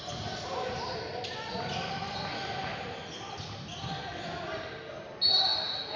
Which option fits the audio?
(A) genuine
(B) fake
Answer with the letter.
A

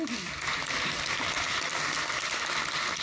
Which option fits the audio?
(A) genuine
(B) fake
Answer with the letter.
A